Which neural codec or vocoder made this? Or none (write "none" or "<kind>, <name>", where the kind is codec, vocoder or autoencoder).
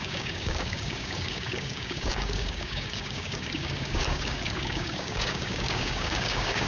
codec, DAC